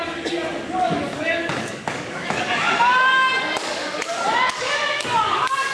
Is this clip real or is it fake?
fake